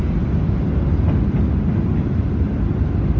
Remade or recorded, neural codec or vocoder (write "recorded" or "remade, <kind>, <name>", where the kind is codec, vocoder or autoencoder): recorded